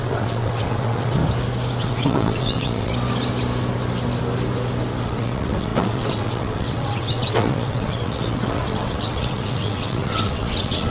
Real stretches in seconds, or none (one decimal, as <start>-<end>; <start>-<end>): 1.2-1.8; 2.9-5.0

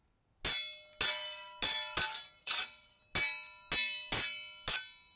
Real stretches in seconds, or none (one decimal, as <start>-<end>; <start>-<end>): 0.0-2.4; 3.0-5.2